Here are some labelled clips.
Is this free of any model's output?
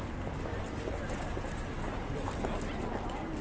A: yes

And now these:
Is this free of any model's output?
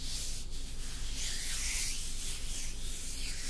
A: yes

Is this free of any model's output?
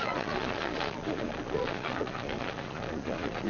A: no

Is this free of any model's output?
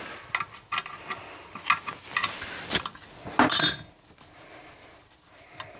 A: yes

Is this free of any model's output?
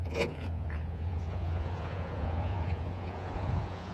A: no